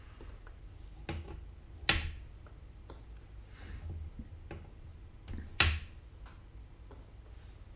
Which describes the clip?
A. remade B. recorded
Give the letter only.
B